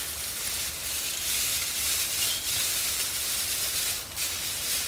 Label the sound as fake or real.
real